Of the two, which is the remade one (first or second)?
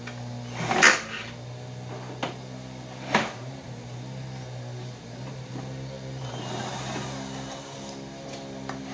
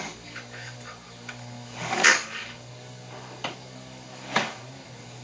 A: second